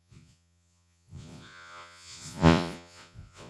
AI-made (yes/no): yes